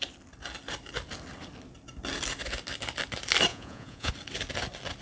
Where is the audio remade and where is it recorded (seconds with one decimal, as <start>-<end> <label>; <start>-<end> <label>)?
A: 0.0-3.5 recorded; 3.5-4.1 remade; 4.1-5.0 recorded